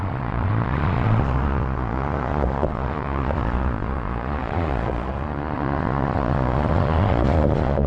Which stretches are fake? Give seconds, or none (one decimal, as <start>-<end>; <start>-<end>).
0.0-7.9